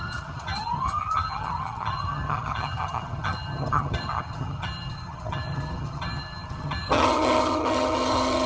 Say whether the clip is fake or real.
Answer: fake